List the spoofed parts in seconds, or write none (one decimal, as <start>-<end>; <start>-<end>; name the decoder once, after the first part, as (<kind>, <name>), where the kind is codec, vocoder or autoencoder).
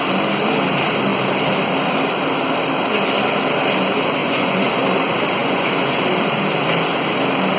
4.2-4.7 (vocoder, Vocos); 5.4-6.0